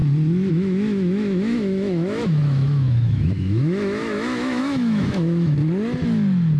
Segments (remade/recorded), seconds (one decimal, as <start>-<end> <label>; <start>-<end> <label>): 0.0-0.5 recorded; 0.5-5.6 remade; 5.6-6.6 recorded